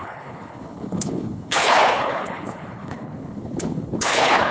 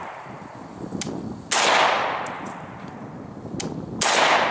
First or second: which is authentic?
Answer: second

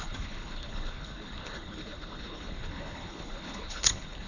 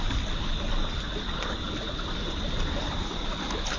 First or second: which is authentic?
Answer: second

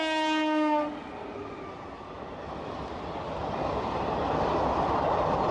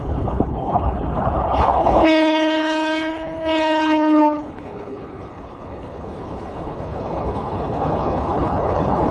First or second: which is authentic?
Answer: first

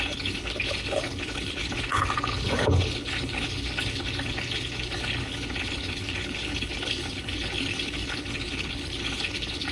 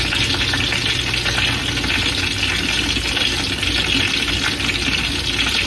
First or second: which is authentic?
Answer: second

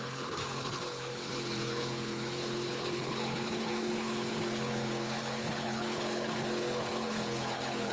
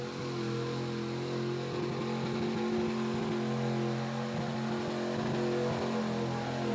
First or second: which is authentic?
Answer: second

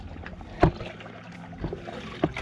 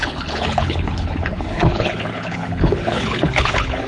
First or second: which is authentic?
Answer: first